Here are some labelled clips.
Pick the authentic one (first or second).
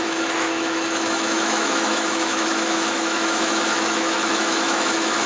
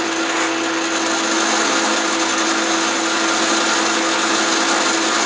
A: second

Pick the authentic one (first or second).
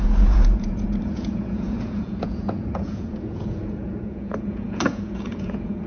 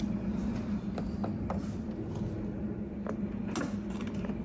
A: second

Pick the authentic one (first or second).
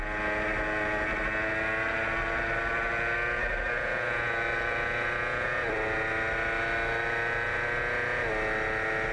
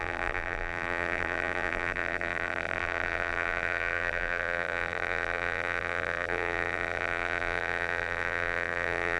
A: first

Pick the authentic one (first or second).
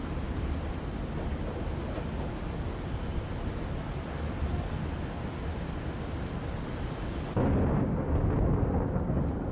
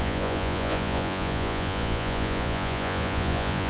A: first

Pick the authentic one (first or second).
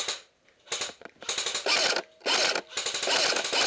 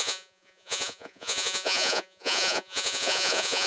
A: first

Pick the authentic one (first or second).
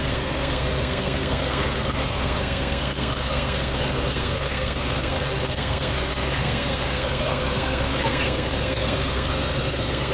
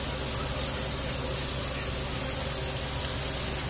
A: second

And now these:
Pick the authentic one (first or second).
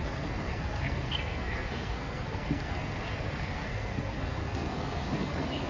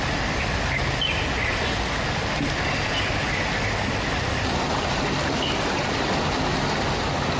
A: second